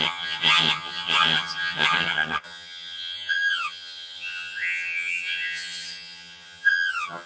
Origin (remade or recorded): remade